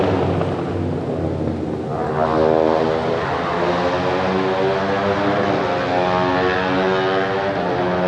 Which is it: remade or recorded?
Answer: recorded